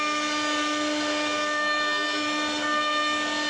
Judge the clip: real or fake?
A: real